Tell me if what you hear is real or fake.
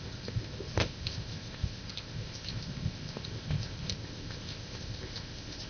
fake